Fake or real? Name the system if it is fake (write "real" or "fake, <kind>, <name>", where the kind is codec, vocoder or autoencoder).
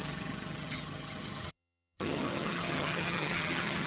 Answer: fake, vocoder, HiFi-GAN